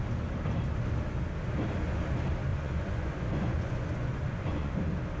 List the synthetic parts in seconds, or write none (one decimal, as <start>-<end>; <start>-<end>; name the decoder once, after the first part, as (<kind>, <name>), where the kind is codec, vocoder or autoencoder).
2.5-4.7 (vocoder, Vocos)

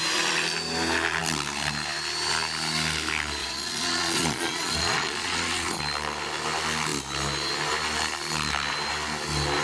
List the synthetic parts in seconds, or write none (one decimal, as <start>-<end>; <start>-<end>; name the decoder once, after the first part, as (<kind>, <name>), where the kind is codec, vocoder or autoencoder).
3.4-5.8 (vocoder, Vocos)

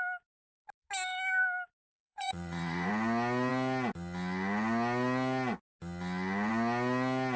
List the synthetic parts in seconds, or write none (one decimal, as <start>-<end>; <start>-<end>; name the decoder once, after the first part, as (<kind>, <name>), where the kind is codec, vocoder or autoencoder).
1.9-2.9 (vocoder, Vocos)

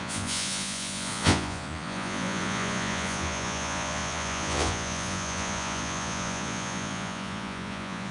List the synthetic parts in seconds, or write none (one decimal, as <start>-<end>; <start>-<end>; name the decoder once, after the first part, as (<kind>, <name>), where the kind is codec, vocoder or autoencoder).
0.0-8.1 (vocoder, Vocos)

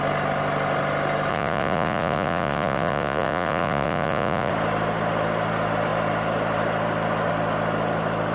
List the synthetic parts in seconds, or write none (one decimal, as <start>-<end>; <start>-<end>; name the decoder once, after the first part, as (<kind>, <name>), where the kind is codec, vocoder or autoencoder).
1.3-4.5 (vocoder, Vocos)

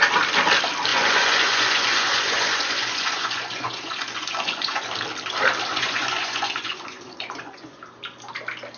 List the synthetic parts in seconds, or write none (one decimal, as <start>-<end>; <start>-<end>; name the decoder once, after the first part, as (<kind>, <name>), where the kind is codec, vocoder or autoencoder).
0.9-4.9 (vocoder, Vocos); 5.7-7.8